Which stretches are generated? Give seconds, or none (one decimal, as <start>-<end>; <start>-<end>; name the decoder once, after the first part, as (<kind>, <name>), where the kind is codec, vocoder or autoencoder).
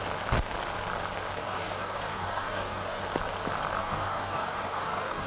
1.4-3.0 (codec, DAC); 3.8-5.3